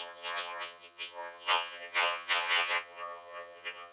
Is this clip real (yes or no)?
no